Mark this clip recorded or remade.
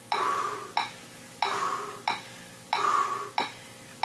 recorded